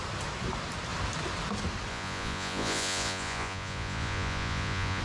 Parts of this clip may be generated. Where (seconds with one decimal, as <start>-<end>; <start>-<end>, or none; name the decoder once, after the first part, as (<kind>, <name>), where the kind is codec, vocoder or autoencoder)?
1.9-5.0 (vocoder, Vocos)